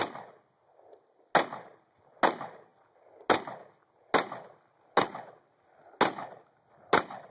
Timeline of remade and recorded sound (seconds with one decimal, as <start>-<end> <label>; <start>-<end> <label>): 0.0-7.3 recorded